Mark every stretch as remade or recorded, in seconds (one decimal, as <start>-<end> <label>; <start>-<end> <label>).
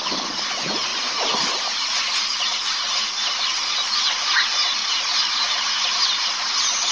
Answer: 0.0-6.9 recorded